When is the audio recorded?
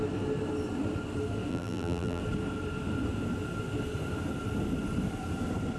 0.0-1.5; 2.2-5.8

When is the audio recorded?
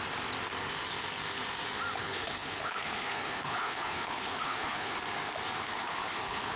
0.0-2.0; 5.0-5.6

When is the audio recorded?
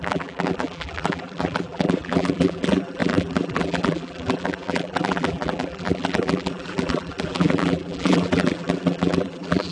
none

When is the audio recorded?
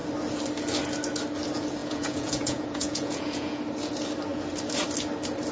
0.0-1.8; 3.6-5.5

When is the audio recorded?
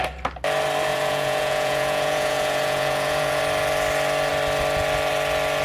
0.0-0.9; 3.4-5.6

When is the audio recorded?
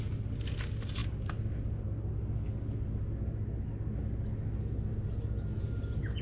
0.0-6.2